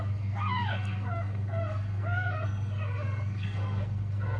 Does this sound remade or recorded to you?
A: remade